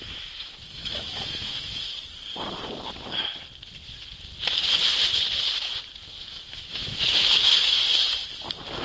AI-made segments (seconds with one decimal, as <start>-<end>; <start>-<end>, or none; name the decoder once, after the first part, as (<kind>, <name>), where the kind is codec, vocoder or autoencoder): 0.0-1.9 (autoencoder, DAC-VAE); 6.3-7.8